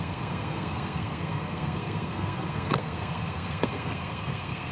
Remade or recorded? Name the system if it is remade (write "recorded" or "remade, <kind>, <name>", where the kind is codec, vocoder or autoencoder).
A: remade, codec, SNAC